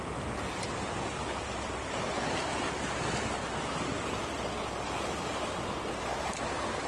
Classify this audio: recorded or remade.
recorded